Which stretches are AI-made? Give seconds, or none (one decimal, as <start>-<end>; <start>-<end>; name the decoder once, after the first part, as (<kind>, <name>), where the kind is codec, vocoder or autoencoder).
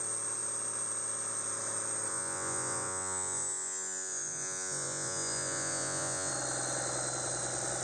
2.1-6.3 (vocoder, Vocos)